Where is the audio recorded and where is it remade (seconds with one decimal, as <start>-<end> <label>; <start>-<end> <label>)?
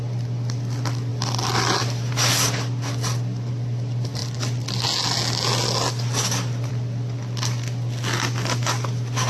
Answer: 0.0-9.3 recorded